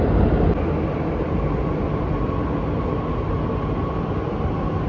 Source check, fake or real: real